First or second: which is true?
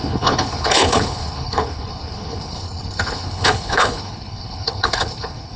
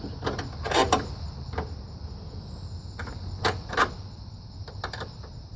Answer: second